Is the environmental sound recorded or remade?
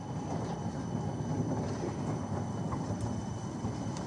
recorded